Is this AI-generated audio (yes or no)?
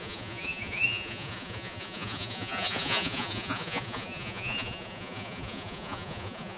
yes